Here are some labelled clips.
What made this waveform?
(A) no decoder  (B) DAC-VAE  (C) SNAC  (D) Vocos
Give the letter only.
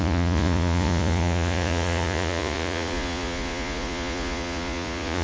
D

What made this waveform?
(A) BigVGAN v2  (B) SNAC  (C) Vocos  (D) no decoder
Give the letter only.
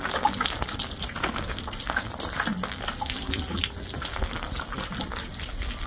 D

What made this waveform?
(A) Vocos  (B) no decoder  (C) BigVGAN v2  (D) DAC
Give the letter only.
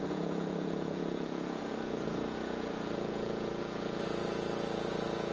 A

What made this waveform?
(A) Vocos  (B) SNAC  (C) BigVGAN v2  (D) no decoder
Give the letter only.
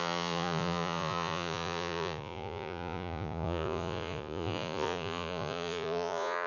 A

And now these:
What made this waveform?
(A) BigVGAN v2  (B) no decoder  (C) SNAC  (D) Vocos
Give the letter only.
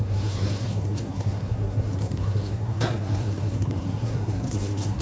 C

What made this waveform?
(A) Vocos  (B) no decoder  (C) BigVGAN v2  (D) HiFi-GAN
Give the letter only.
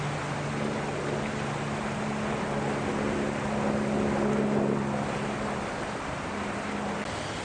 B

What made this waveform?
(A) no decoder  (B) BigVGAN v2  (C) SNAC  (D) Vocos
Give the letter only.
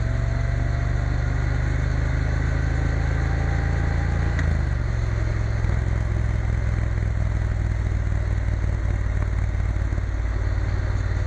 A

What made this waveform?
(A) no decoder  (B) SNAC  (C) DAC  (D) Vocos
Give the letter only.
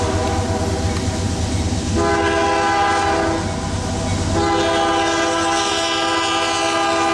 A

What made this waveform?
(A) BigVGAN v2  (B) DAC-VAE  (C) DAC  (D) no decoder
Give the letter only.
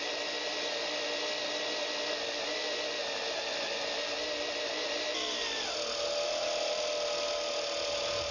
D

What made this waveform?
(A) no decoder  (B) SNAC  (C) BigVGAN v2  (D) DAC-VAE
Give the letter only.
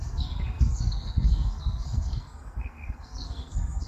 B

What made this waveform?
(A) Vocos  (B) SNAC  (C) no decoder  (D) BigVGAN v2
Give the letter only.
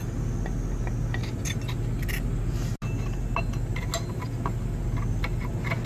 C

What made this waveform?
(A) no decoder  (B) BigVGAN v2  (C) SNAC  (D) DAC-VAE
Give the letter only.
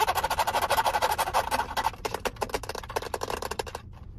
B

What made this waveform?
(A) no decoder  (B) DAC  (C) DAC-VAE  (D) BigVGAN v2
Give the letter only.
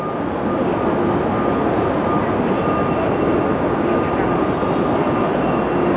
A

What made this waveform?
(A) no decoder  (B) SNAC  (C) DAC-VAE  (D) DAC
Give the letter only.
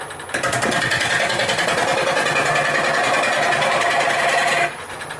A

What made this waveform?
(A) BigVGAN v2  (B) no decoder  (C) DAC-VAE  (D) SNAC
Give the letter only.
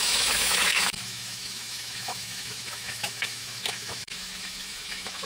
C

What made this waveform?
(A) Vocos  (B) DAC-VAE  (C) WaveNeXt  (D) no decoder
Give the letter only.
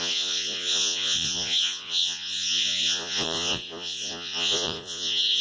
A